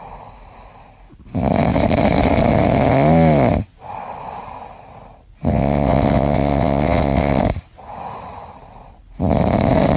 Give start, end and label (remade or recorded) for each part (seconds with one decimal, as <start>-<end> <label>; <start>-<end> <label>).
0.0-5.5 recorded; 5.5-7.4 remade; 7.4-10.0 recorded